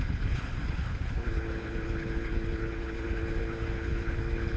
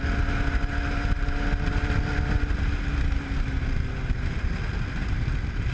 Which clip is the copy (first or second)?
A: first